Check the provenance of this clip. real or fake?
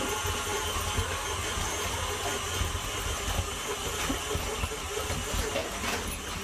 real